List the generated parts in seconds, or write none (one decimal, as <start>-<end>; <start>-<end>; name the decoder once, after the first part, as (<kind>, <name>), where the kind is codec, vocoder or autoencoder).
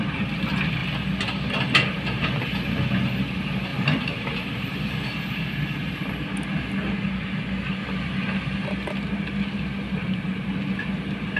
3.7-4.8 (vocoder, BigVGAN v2)